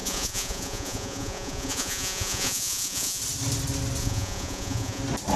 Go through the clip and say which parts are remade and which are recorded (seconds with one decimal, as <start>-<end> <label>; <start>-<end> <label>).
0.0-3.2 remade; 3.2-4.0 recorded; 4.0-5.0 remade; 5.0-5.4 recorded